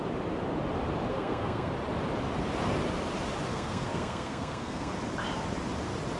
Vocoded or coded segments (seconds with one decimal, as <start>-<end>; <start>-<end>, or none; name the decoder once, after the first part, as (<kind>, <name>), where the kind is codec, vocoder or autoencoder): 1.1-1.7 (codec, SNAC); 3.5-4.9

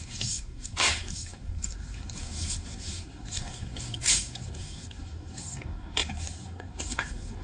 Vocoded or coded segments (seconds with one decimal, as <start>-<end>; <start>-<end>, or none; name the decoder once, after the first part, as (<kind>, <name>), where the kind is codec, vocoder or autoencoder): 0.0-7.4 (codec, SNAC)

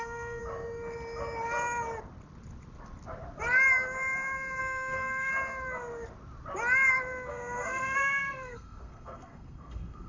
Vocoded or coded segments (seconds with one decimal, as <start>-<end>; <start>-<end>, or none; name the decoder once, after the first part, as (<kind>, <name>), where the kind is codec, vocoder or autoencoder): 0.0-0.4 (codec, SNAC); 4.6-5.3; 7.3-10.1

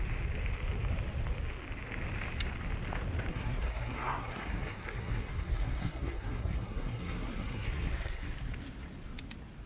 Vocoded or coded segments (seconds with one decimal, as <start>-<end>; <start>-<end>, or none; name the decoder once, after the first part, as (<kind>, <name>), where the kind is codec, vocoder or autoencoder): 3.3-8.3 (codec, SNAC)

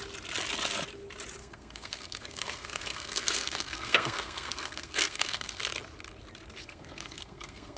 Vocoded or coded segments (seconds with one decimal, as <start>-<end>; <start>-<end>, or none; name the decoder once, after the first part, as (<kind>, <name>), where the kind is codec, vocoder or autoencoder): 1.4-5.6 (codec, SNAC); 6.6-7.8